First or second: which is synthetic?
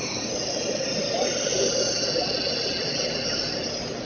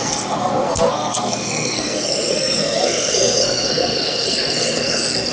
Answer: second